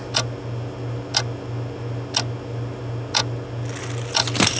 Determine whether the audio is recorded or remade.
recorded